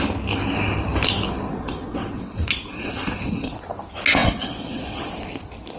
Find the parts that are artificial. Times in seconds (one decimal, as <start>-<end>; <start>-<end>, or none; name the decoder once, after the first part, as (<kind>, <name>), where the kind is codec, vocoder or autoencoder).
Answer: 1.5-3.6 (vocoder, WaveNeXt); 4.2-5.2